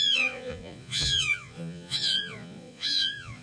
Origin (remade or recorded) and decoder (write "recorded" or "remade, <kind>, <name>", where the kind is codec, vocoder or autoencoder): remade, vocoder, Vocos